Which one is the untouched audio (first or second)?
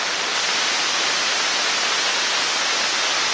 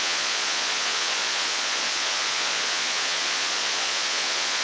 first